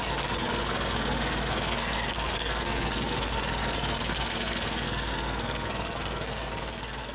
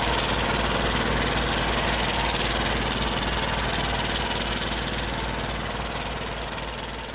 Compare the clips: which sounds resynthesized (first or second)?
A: first